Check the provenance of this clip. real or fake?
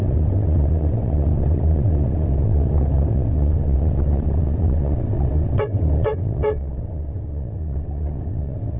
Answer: fake